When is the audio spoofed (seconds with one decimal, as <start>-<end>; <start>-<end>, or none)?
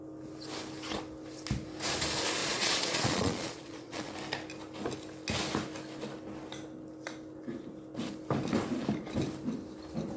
2.4-4.1